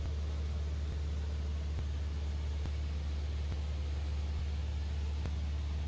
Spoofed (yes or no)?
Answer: no